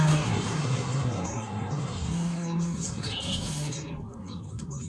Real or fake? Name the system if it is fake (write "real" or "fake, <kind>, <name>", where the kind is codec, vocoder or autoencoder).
fake, codec, SNAC